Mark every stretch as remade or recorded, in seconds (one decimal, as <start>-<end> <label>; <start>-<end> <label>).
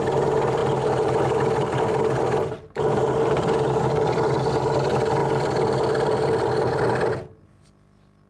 0.0-8.3 recorded